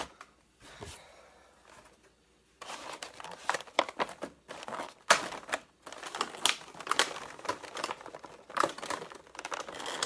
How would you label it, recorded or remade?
recorded